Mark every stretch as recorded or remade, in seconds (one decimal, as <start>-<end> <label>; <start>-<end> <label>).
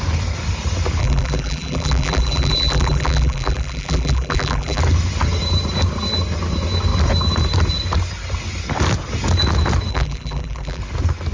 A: 0.0-1.0 recorded; 1.0-4.8 remade; 4.8-9.9 recorded; 9.9-10.8 remade; 10.8-11.3 recorded